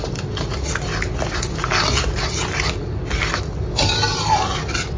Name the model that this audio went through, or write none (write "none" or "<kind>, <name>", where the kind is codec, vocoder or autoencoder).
none